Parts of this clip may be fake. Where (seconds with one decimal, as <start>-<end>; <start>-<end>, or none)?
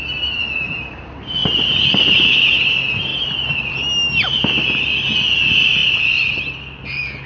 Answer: 1.4-1.9; 3.1-3.7